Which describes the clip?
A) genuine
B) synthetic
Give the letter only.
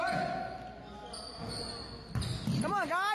A